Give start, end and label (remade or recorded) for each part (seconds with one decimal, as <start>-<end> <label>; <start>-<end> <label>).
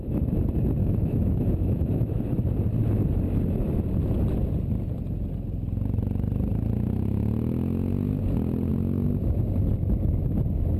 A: 0.0-0.8 recorded; 0.8-2.2 remade; 2.2-10.8 recorded